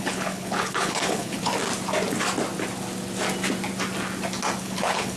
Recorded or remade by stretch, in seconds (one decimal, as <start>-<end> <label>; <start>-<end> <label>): 0.0-1.5 remade; 1.5-4.6 recorded; 4.6-5.2 remade